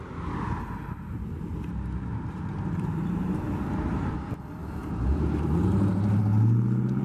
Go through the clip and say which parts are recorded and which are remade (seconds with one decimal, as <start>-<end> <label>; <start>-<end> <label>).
0.0-1.5 recorded; 1.5-4.1 remade; 4.1-4.6 recorded; 4.6-6.2 remade; 6.2-7.0 recorded